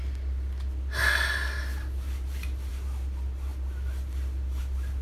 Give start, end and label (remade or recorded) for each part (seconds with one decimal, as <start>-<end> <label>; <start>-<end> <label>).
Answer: 0.0-5.0 recorded